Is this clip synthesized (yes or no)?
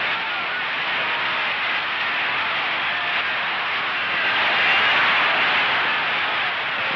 no